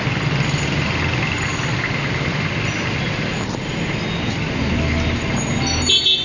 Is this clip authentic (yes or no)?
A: yes